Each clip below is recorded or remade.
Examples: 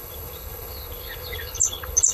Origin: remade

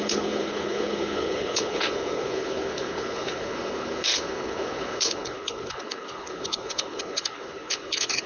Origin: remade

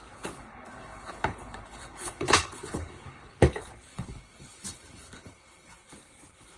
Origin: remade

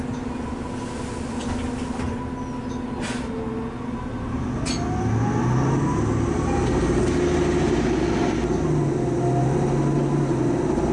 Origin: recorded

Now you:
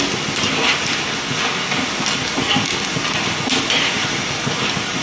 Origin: recorded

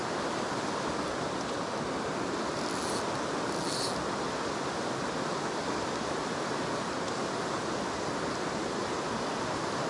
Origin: recorded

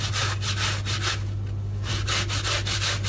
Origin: recorded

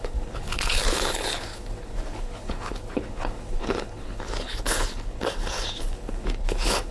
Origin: remade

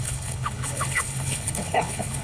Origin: remade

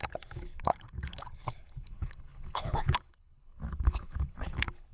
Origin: remade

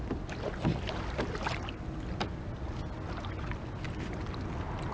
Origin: recorded